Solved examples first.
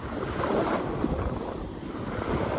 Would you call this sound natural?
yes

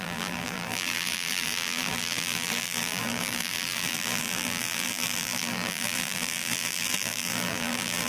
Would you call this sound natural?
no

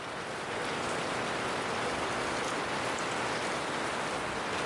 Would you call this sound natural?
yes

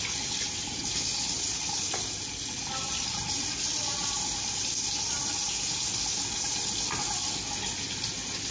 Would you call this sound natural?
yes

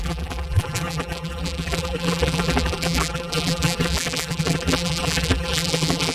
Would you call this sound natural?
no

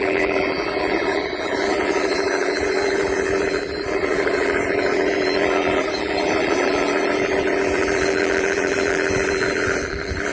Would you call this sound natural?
no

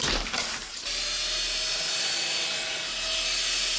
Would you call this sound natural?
yes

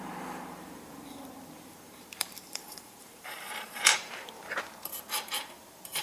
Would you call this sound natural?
no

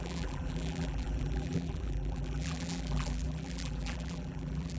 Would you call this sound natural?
no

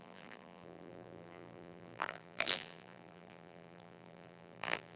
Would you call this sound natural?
no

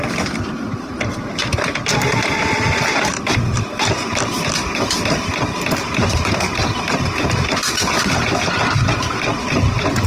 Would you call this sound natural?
yes